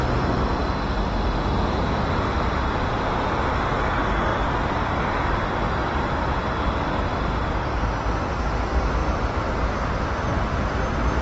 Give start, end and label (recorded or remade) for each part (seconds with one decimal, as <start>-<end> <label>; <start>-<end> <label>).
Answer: 0.0-4.3 recorded; 4.3-6.4 remade; 6.4-9.0 recorded; 9.0-9.7 remade; 9.7-11.2 recorded